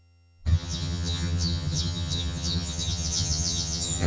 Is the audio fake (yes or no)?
yes